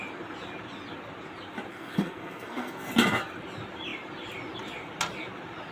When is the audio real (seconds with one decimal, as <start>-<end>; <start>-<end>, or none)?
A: 0.0-1.7; 2.9-5.7